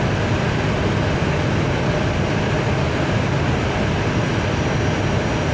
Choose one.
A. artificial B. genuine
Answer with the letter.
B